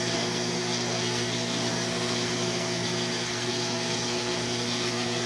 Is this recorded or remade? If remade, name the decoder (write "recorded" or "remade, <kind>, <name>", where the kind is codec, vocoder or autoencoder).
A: remade, codec, SNAC